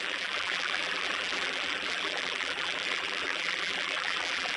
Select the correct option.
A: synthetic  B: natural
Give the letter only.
A